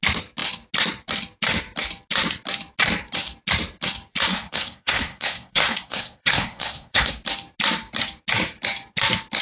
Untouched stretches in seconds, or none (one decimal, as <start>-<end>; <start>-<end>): 0.0-4.3; 7.2-9.4